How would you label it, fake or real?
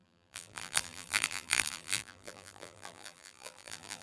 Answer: fake